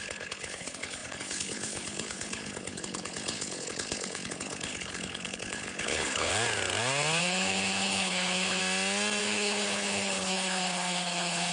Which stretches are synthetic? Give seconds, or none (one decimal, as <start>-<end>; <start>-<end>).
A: 0.0-6.3; 7.2-8.6; 9.2-11.5